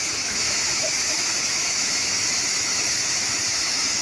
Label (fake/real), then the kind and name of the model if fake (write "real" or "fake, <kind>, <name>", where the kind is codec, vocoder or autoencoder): fake, autoencoder, DAC-VAE